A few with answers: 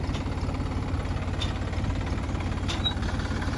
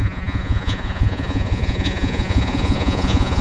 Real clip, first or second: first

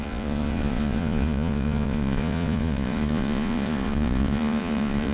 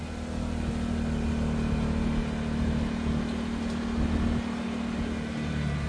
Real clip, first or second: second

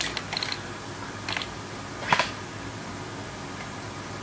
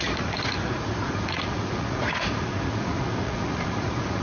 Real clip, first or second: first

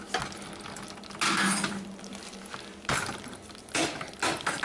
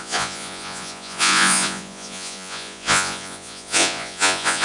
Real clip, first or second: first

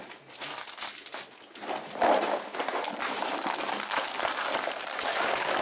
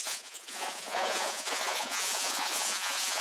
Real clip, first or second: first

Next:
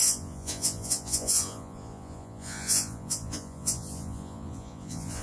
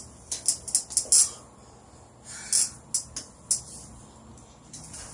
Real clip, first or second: second